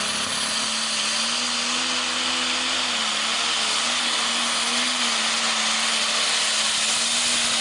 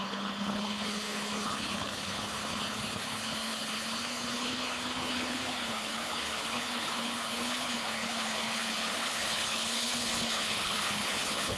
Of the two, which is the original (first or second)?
first